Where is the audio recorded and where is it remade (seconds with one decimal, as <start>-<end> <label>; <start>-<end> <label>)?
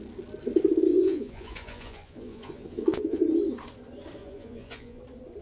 0.0-0.9 recorded; 0.9-3.2 remade; 3.2-4.2 recorded; 4.2-5.0 remade; 5.0-5.4 recorded